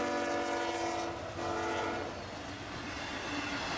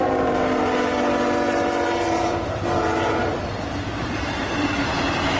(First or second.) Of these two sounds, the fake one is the second